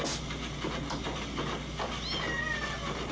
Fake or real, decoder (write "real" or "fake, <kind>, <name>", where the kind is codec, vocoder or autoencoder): real